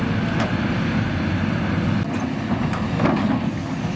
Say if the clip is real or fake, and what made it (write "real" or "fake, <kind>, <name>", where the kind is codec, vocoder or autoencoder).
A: real